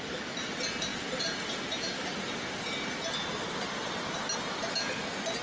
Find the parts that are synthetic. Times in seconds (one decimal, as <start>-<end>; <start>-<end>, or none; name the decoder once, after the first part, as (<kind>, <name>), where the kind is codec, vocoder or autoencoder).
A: none